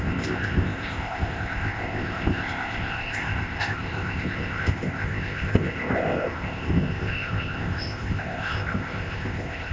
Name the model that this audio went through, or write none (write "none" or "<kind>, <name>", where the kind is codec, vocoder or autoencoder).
codec, ZipCodec